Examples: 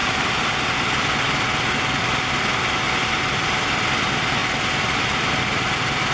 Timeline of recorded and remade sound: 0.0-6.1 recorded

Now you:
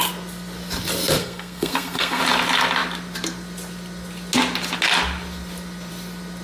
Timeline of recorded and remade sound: 0.0-1.2 recorded; 1.2-2.2 remade; 2.2-6.4 recorded